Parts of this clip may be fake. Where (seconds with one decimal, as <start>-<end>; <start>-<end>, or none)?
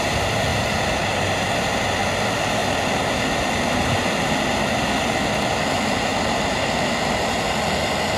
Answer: 0.5-1.5